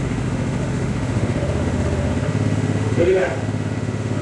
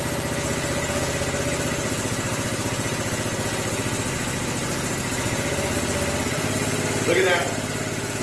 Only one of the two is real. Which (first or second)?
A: second